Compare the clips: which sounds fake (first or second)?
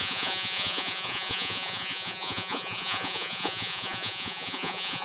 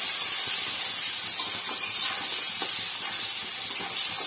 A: first